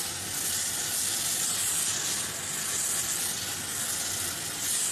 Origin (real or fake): real